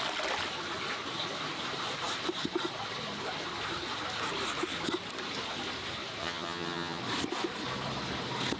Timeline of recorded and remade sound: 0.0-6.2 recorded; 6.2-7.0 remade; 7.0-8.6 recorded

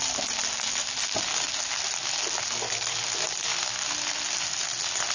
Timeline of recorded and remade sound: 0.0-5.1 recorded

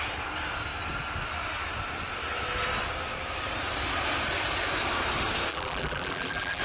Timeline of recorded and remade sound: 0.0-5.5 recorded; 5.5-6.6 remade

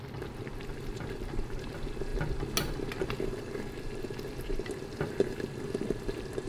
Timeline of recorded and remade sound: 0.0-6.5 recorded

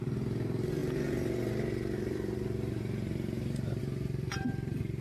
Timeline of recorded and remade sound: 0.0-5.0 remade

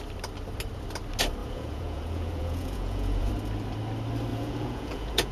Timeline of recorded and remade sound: 0.0-1.4 recorded; 1.4-3.3 remade; 3.3-4.3 recorded; 4.3-5.3 remade

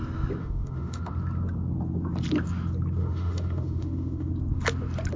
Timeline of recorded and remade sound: 0.0-0.4 recorded; 0.4-1.1 remade; 1.1-3.0 recorded; 3.0-4.3 remade; 4.3-5.2 recorded

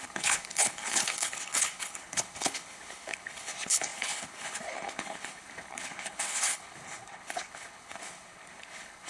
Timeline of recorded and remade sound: 0.0-9.1 remade